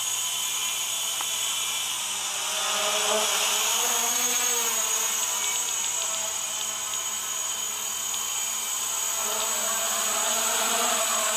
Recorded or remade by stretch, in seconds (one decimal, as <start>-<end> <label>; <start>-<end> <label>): 0.0-11.4 recorded